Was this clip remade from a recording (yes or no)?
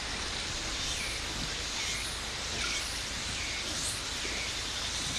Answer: no